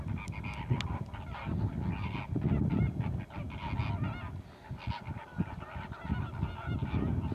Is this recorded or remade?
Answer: recorded